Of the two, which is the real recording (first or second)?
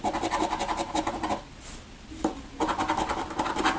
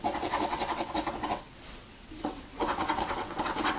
first